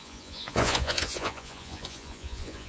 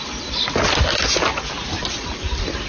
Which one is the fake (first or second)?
first